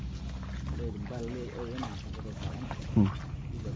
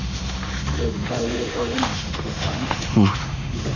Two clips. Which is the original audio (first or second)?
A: first